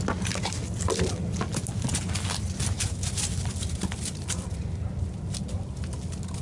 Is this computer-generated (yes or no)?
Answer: no